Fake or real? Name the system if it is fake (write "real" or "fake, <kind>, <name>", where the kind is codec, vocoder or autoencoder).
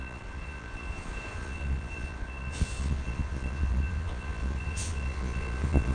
fake, vocoder, Vocos